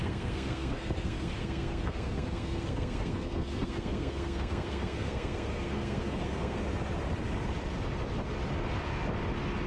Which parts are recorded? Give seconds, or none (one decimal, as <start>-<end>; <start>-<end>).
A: 6.6-9.7